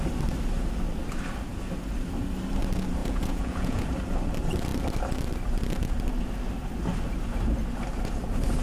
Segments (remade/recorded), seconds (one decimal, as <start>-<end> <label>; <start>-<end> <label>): 0.0-3.0 recorded; 3.0-3.9 remade; 3.9-8.6 recorded